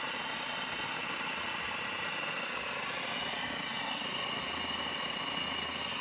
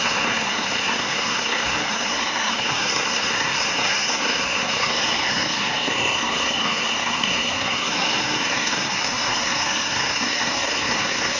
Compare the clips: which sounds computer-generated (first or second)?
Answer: second